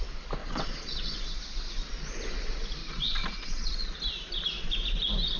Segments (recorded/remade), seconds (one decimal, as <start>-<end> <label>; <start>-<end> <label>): 0.0-0.4 recorded; 0.4-1.2 remade; 1.2-2.8 recorded; 2.8-4.0 remade; 4.0-5.4 recorded